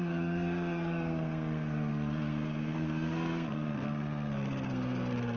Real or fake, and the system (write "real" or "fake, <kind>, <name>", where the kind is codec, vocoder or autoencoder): fake, codec, SNAC